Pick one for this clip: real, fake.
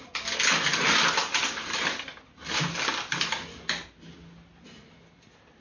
real